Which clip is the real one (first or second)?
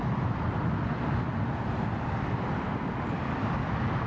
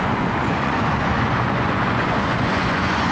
first